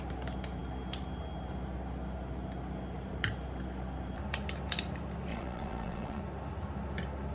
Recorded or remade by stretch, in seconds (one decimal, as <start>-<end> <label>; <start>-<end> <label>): 0.0-5.3 recorded; 5.3-6.2 remade; 6.2-7.3 recorded